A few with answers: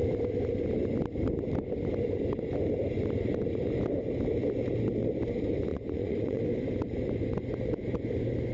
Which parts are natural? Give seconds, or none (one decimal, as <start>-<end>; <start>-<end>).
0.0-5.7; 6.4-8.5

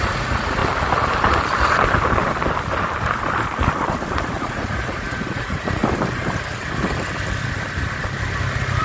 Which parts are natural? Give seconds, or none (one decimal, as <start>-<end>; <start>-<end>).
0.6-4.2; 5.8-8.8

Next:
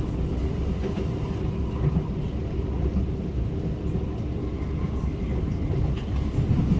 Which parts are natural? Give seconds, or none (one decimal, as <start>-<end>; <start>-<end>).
0.0-6.8

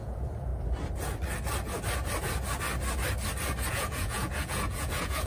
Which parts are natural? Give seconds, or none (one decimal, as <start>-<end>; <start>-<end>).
0.5-3.7

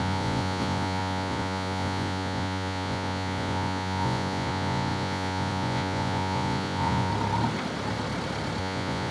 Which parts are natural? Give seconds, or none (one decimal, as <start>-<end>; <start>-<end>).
7.1-8.6

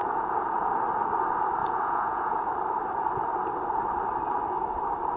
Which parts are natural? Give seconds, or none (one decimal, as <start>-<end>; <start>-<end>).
0.7-1.6; 2.5-5.2